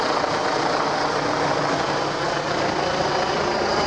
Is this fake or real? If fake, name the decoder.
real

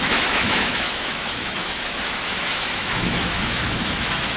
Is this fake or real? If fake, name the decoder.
fake, autoencoder, DAC-VAE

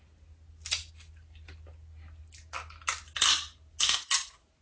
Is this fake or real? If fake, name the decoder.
real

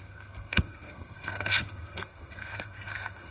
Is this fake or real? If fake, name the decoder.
fake, codec, SNAC